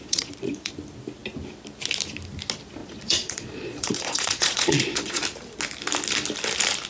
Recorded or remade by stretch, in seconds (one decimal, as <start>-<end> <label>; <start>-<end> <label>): 0.0-0.7 remade; 0.7-2.8 recorded; 2.8-5.2 remade; 5.2-6.9 recorded